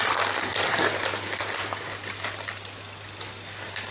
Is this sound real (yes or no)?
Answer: yes